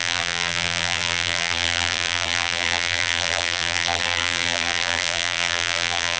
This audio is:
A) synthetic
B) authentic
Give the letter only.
A